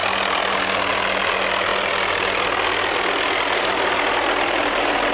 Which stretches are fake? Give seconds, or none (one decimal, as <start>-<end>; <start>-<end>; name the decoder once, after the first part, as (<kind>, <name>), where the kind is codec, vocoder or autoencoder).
none